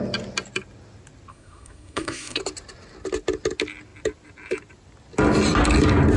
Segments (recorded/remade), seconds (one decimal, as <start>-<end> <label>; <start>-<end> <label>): 0.0-1.3 recorded; 1.3-2.4 remade; 2.4-6.2 recorded